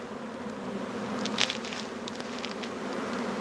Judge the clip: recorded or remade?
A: recorded